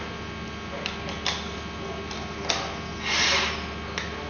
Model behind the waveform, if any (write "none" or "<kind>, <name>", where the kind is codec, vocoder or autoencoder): none